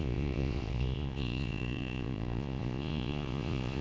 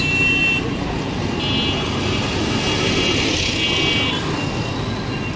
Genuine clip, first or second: second